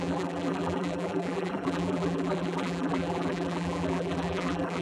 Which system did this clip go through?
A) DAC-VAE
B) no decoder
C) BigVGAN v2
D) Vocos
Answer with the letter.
C